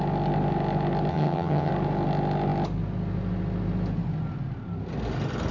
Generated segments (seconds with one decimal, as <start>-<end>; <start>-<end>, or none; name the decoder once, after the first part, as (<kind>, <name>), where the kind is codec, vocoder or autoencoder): 1.1-1.7 (vocoder, HiFi-GAN)